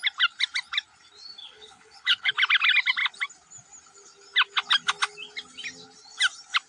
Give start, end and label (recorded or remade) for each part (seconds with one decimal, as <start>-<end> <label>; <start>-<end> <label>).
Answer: 0.0-1.4 recorded; 1.4-2.3 remade; 2.3-6.7 recorded